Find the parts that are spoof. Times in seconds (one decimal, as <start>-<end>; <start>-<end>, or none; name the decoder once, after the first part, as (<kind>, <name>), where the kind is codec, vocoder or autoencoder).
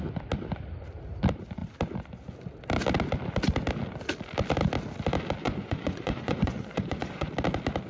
5.4-7.3 (vocoder, Vocos)